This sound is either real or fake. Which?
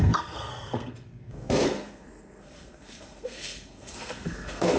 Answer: fake